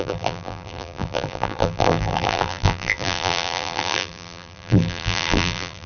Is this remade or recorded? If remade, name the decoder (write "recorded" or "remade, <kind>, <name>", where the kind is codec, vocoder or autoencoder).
remade, vocoder, BigVGAN v2